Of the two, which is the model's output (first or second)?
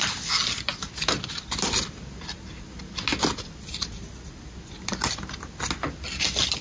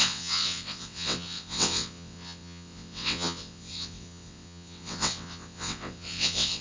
second